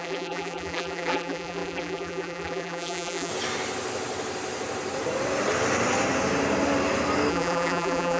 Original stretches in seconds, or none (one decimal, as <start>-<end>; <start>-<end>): 3.3-7.3